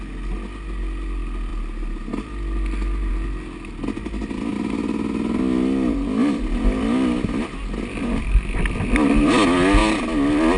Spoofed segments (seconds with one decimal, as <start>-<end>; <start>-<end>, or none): none